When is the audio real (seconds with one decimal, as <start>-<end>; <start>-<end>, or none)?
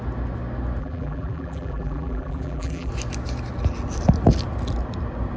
0.0-0.8; 2.9-5.4